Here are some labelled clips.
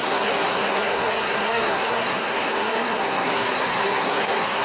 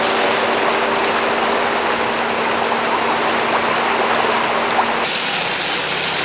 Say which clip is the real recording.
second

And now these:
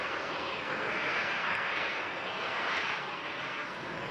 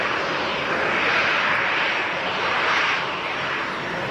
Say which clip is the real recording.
second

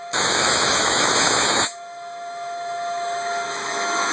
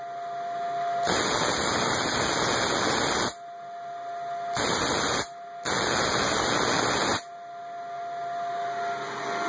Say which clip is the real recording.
second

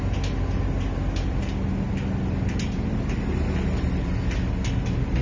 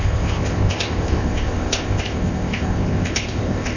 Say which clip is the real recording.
first